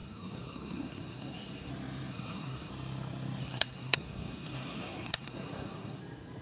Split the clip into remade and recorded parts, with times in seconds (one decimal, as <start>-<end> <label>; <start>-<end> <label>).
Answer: 0.0-1.7 remade; 1.7-2.1 recorded; 2.1-2.7 remade; 2.7-3.4 recorded; 3.4-6.0 remade; 6.0-6.4 recorded

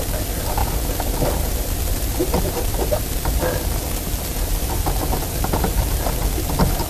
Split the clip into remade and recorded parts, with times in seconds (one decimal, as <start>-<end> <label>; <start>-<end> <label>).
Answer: 0.0-6.9 recorded